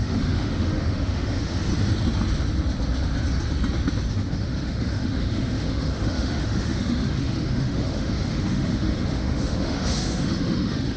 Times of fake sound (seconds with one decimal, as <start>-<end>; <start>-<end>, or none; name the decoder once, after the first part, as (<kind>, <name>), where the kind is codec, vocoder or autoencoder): 0.0-1.7 (autoencoder, DAC-VAE); 4.1-11.0